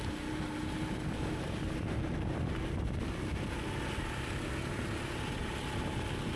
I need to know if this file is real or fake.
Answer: real